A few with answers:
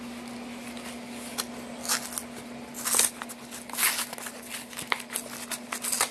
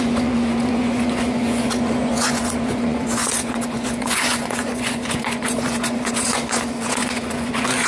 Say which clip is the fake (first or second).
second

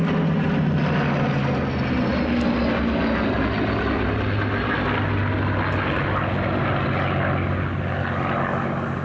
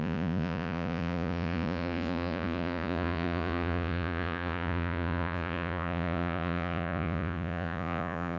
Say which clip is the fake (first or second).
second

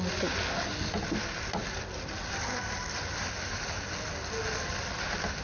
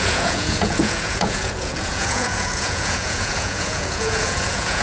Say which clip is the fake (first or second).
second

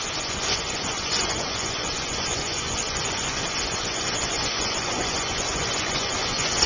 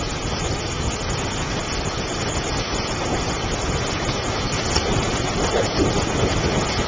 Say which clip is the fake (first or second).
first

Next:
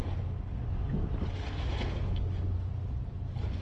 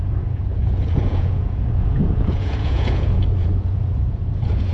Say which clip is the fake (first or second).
second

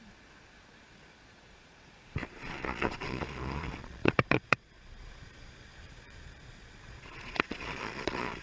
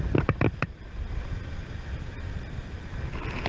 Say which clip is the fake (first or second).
first